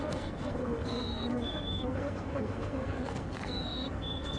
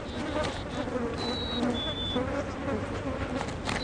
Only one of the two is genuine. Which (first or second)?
second